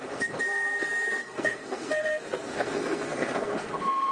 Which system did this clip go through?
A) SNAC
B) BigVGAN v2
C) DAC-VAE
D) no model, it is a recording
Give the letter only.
A